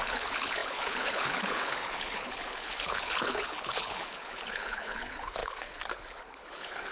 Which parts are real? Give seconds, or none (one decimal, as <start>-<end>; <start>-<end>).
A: none